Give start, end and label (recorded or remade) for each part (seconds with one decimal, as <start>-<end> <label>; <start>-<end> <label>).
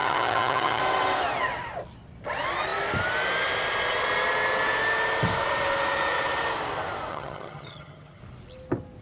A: 0.0-0.8 remade; 0.8-7.1 recorded; 7.1-8.2 remade; 8.2-9.0 recorded